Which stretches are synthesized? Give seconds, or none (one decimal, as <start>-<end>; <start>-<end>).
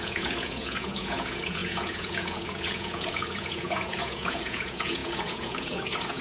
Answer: 0.0-6.2